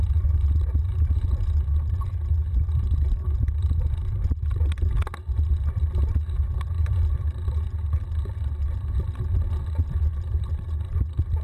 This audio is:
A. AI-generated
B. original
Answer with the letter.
B